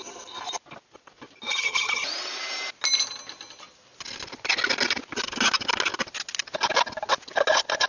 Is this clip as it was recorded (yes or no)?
yes